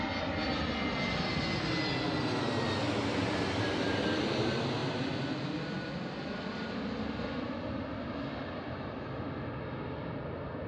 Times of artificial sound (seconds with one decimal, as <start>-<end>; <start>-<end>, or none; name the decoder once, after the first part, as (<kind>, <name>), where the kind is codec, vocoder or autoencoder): none